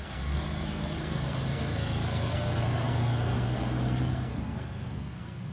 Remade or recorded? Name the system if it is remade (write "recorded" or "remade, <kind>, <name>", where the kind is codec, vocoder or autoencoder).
remade, codec, SNAC